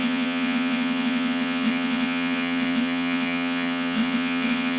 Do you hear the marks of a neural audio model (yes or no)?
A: yes